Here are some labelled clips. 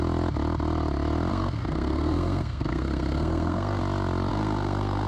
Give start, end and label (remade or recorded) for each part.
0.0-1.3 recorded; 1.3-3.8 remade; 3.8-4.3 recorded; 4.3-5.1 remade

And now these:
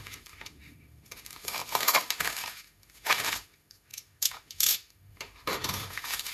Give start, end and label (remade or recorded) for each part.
0.0-6.3 remade

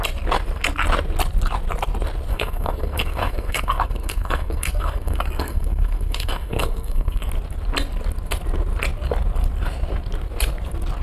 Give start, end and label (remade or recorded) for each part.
0.0-2.3 recorded; 2.3-7.3 remade; 7.3-11.0 recorded

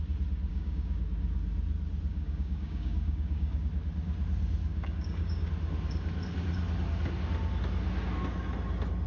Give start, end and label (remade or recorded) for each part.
0.0-0.5 recorded; 0.5-1.0 remade; 1.0-2.1 recorded; 2.1-3.7 remade; 3.7-4.7 recorded; 4.7-5.5 remade; 5.5-9.1 recorded